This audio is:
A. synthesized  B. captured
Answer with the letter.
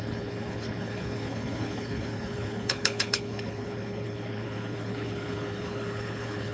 A